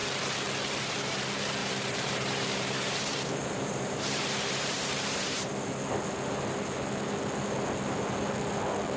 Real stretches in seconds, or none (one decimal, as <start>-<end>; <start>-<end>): 0.0-1.6; 5.5-9.0